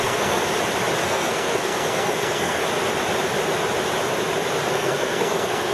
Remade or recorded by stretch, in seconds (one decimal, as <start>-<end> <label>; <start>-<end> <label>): 0.0-0.4 remade; 0.4-1.0 recorded; 1.0-2.6 remade; 2.6-4.7 recorded; 4.7-5.7 remade